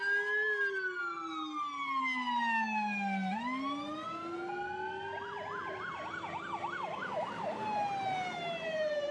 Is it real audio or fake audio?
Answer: real